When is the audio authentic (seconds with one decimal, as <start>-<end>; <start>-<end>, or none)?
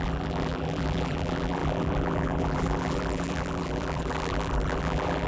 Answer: none